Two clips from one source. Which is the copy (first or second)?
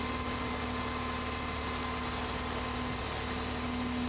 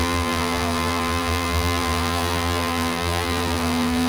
second